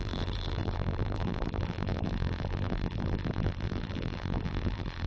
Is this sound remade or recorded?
remade